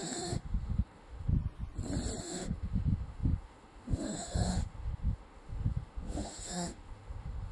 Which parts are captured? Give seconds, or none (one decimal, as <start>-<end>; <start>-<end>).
1.3-2.2